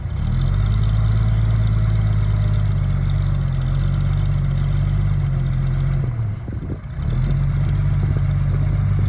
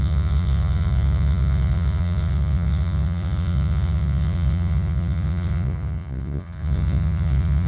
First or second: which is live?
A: first